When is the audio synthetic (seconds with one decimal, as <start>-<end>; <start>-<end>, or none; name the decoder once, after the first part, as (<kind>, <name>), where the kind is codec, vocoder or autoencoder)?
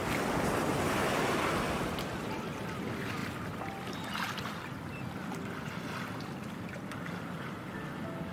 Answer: none